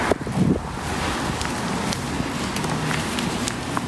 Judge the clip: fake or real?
real